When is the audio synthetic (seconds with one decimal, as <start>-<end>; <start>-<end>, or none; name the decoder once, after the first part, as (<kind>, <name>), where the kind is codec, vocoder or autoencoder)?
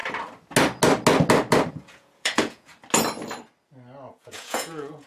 1.7-2.7 (vocoder, Vocos); 4.1-5.1